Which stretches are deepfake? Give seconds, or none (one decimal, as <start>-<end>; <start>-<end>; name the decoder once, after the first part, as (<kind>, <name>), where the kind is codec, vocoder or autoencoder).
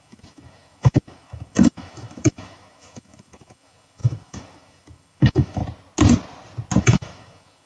0.0-5.6 (autoencoder, DAC-VAE); 6.8-7.7